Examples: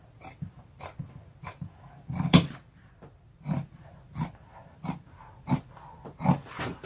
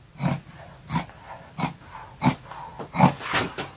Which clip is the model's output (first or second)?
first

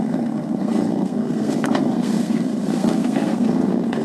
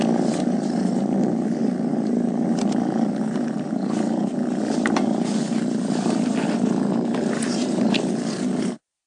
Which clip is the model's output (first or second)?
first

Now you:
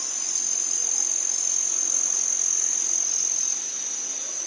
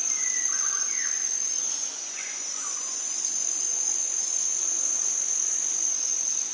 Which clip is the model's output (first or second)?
second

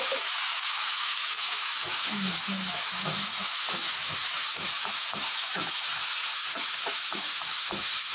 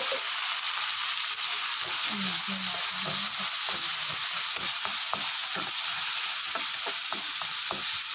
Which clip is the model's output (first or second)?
first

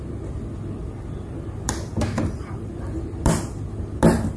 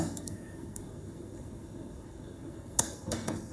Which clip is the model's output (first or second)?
second